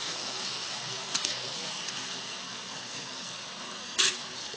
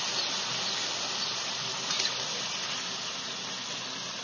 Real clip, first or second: second